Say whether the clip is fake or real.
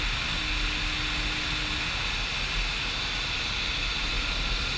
real